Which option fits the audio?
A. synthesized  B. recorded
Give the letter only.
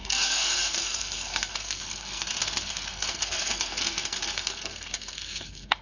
A